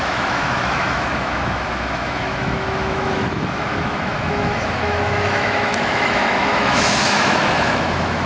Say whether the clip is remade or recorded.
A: remade